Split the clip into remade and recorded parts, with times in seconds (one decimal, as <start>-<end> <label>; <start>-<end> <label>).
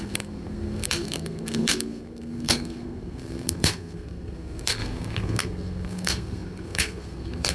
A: 0.0-7.5 remade